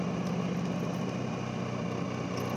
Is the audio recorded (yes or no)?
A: yes